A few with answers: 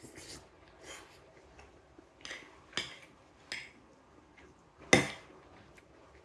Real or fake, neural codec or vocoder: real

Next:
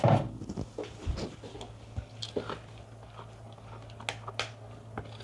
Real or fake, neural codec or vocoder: real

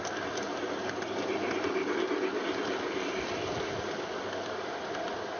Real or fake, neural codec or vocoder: real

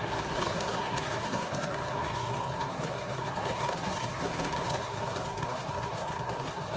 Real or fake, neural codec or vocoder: fake, codec, SNAC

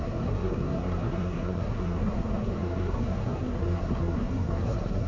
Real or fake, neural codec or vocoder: fake, codec, SNAC